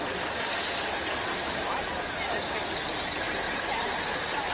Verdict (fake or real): real